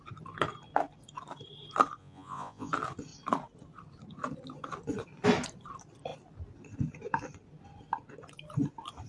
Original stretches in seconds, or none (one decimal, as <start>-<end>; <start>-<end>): 0.0-2.0; 2.7-9.1

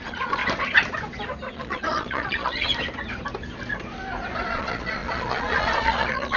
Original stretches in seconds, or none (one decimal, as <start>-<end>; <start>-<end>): 0.4-1.5; 2.7-4.5